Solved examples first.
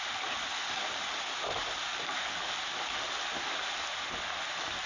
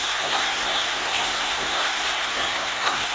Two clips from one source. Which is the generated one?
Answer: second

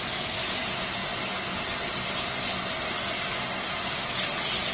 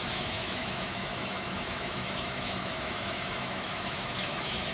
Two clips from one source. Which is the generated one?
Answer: second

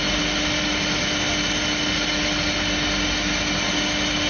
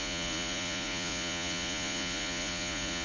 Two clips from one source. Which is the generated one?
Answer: second